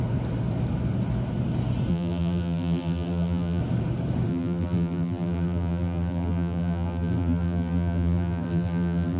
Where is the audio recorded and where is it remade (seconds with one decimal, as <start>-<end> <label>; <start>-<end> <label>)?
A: 0.0-1.9 recorded; 1.9-3.6 remade; 3.6-4.3 recorded; 4.3-9.2 remade